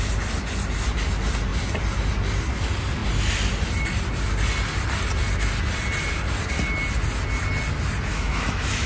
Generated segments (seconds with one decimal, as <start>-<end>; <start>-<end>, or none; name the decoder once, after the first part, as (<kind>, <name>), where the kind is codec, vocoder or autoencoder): 8.1-8.9 (autoencoder, DAC-VAE)